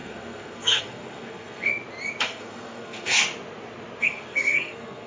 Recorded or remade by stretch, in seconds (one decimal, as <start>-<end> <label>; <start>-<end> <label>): 0.0-1.7 remade; 1.7-2.2 recorded; 2.2-3.2 remade; 3.2-4.0 recorded; 4.0-5.1 remade